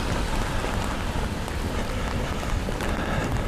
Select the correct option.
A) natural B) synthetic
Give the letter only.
A